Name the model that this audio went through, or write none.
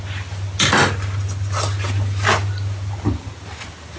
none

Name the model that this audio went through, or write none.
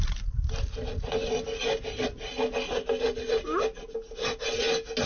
none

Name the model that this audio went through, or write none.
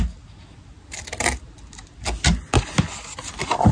none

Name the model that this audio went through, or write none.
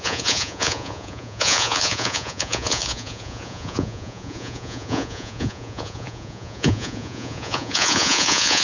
vocoder, Vocos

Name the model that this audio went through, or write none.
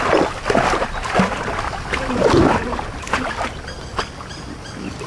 none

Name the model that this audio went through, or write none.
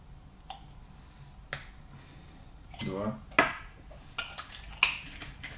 none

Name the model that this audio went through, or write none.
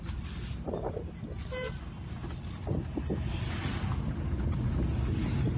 none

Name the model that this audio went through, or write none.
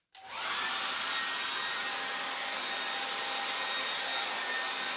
none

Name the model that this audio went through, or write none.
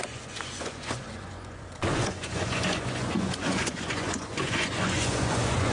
vocoder, Vocos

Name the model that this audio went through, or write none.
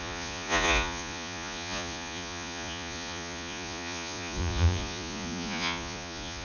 vocoder, Vocos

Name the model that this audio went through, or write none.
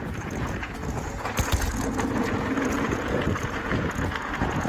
vocoder, Vocos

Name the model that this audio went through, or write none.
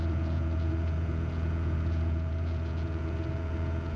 vocoder, Vocos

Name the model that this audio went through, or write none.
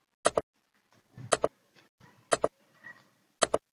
none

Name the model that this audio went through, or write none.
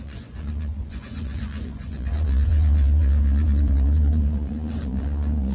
vocoder, Vocos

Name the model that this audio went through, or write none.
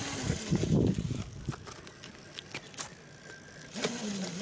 none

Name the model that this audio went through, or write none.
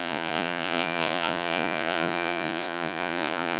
vocoder, Vocos